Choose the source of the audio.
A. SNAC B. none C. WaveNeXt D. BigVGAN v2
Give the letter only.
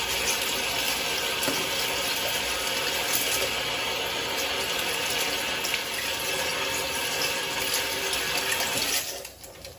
B